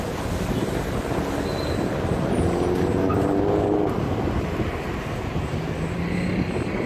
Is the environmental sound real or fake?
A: real